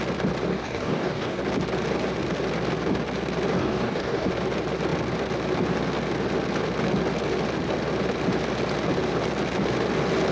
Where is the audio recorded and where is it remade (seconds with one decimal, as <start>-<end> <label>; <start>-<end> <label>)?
0.0-0.5 recorded; 0.5-1.4 remade; 1.4-3.6 recorded; 3.6-4.3 remade; 4.3-10.3 recorded